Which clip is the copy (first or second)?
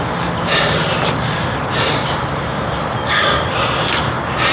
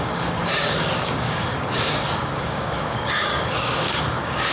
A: second